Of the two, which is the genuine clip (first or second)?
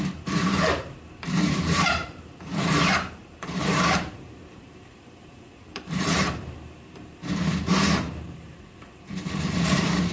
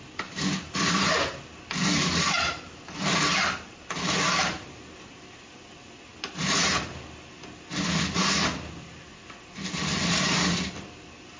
second